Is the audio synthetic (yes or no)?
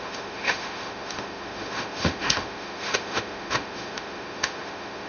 yes